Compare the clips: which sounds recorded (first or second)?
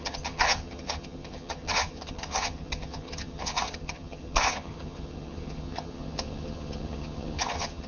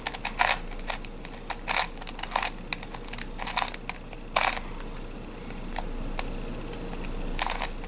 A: second